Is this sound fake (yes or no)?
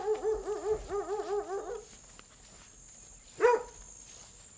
no